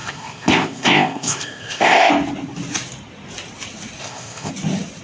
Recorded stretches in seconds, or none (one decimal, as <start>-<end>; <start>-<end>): 2.1-4.0; 4.5-5.0